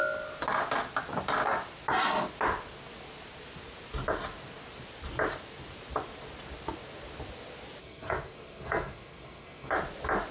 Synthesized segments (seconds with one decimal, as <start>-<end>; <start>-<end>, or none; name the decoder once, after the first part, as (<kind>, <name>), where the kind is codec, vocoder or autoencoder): 7.8-9.7 (codec, SNAC)

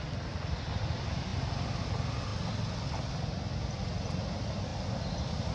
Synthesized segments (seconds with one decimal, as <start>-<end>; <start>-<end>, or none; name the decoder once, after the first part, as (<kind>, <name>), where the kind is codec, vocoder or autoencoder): none

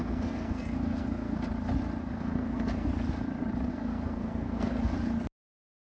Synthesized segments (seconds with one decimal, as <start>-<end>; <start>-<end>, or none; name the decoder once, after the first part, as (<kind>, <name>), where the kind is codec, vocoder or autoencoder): 0.0-1.5 (codec, SNAC); 2.0-2.9; 3.7-4.7

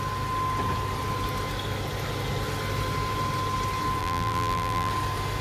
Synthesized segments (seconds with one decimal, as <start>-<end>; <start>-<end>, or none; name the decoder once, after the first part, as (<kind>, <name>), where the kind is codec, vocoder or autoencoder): 4.0-4.9 (vocoder, BigVGAN v2)